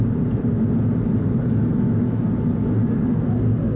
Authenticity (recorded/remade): recorded